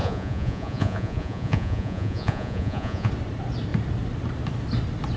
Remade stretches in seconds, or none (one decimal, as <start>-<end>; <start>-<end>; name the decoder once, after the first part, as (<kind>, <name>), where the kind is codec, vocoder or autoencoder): 0.0-3.1 (vocoder, Vocos)